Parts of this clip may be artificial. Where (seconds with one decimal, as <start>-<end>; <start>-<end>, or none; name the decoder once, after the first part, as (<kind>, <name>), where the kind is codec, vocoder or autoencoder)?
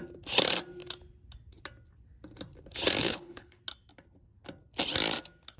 3.0-3.6 (codec, HILCodec)